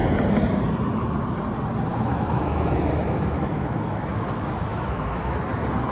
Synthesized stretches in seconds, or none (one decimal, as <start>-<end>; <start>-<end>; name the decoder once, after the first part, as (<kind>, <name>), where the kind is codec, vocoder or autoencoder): 1.9-5.4 (autoencoder, DAC-VAE)